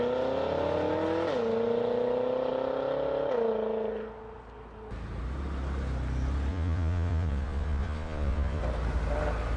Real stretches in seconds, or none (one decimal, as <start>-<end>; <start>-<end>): 0.0-6.5; 8.6-9.6